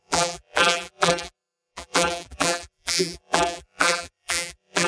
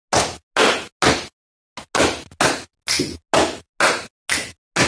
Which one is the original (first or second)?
second